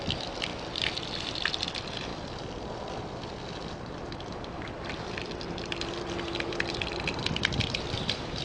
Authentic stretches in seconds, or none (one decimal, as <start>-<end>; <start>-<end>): none